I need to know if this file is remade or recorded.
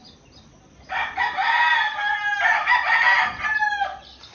recorded